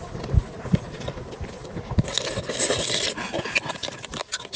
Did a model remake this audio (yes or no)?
no